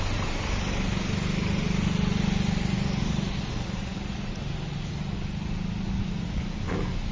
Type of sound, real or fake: real